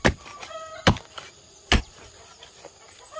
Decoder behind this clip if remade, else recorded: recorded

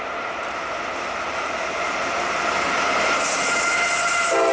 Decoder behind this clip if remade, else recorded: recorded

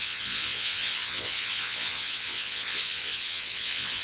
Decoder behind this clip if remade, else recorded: remade, vocoder, Vocos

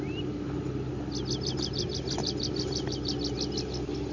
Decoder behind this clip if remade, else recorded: recorded